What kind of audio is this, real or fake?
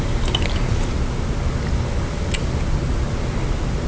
real